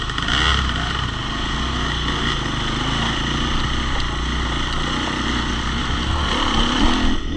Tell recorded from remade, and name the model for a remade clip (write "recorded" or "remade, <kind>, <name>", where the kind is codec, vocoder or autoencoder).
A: recorded